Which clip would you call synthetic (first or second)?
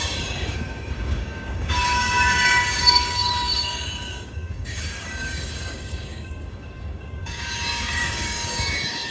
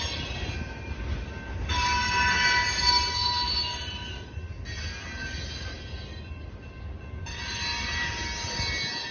first